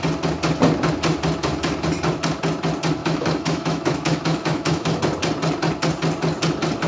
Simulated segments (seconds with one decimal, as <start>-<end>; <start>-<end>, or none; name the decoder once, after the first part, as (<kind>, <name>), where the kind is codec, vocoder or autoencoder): 3.0-5.0 (autoencoder, DAC-VAE)